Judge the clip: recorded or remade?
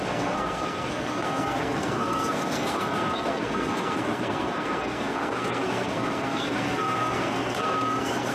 remade